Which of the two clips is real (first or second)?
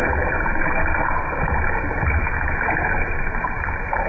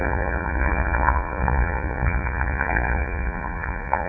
first